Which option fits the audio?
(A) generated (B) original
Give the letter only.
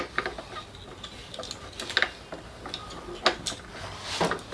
B